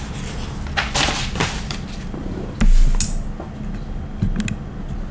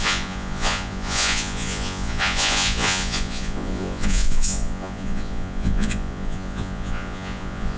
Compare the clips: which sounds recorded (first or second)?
first